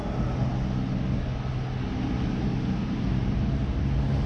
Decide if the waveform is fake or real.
real